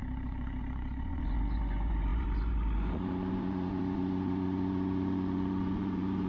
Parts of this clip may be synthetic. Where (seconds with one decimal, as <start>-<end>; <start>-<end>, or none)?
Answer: 0.0-6.3